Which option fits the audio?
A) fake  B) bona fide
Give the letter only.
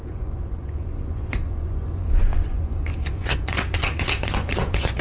A